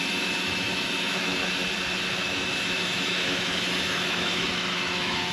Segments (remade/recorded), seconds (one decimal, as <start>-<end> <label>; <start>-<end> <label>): 0.0-1.4 remade; 1.4-2.1 recorded; 2.1-5.3 remade